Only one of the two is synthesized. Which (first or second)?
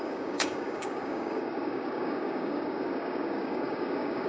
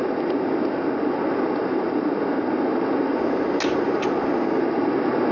first